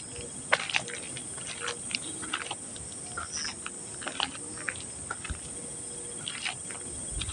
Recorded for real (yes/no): yes